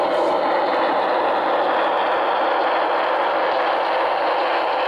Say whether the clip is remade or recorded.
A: recorded